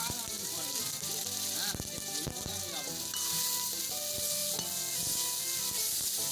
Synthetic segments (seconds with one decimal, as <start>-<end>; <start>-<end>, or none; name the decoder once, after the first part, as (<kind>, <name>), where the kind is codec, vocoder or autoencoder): 0.0-3.8 (vocoder, BigVGAN v2)

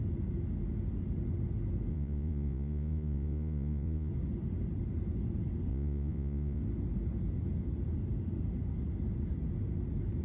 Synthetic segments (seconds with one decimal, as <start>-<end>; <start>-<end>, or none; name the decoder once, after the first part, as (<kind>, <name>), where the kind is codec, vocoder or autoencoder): 1.9-4.1 (vocoder, Vocos); 5.7-6.6

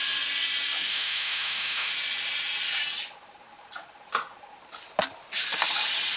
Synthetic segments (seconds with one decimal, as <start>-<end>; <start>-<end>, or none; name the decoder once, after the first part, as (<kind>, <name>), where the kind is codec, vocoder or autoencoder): 0.9-1.9 (autoencoder, DAC-VAE)

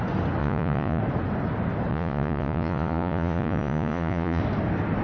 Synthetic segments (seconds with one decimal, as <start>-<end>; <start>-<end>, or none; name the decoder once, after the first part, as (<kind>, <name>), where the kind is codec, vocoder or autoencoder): 0.4-1.0 (vocoder, Vocos); 1.9-4.4

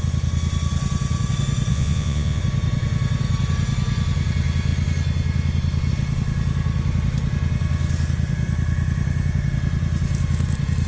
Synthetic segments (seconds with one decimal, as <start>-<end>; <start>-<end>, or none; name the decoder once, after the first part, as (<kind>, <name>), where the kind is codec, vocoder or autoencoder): 1.7-2.4 (vocoder, Vocos)

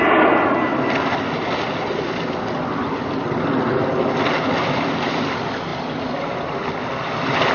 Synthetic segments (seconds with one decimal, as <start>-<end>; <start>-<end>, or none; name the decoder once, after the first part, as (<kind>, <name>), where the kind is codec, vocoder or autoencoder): none

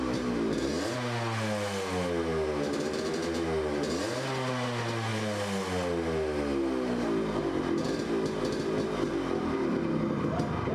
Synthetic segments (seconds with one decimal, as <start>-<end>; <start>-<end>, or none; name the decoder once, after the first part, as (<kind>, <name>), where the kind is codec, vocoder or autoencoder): none